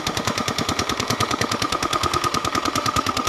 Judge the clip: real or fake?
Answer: fake